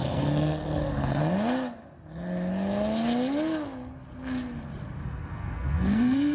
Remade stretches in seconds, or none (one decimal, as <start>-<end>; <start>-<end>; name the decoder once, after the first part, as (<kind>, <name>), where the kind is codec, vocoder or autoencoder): 0.0-1.2 (codec, SNAC); 5.0-6.3